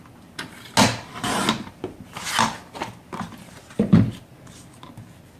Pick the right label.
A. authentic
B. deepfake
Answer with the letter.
A